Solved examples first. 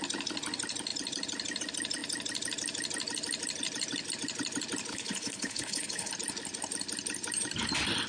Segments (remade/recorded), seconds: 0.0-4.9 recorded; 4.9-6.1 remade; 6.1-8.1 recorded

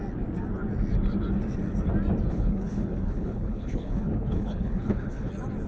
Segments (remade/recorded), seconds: 0.0-2.3 recorded; 2.3-5.3 remade; 5.3-5.7 recorded

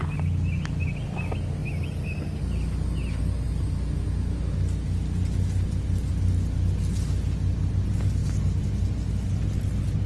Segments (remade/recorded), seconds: 0.0-10.1 recorded

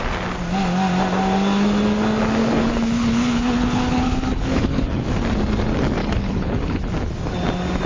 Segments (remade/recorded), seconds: 0.0-2.4 recorded; 2.4-5.1 remade; 5.1-6.0 recorded; 6.0-6.8 remade; 6.8-7.9 recorded